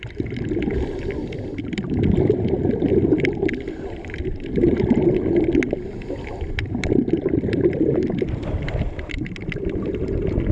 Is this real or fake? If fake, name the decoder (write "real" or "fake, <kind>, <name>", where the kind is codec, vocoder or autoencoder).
fake, vocoder, BigVGAN v2